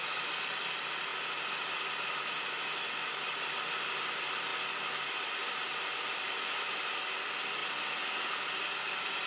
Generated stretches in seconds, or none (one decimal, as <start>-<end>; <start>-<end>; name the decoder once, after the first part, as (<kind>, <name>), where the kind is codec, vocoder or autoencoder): none